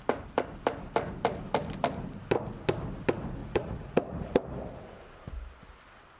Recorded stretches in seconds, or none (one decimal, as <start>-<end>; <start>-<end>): 0.0-3.4; 4.4-6.2